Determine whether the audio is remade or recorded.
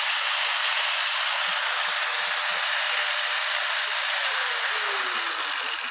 recorded